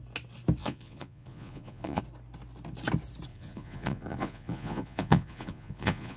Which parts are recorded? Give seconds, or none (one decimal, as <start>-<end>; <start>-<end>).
0.0-0.6; 2.0-3.3